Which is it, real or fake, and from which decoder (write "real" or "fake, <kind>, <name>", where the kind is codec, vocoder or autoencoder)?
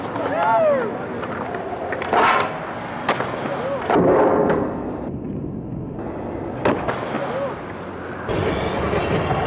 real